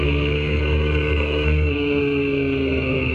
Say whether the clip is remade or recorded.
remade